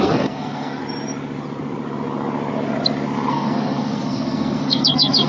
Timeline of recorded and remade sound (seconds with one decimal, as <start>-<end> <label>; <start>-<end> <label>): 0.0-0.8 remade; 0.8-3.3 recorded; 3.3-5.3 remade